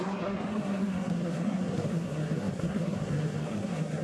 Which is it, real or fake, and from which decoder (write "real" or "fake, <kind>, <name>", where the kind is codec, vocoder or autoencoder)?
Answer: fake, codec, SNAC